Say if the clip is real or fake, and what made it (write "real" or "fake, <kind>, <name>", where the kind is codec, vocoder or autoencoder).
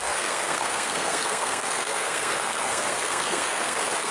fake, codec, SNAC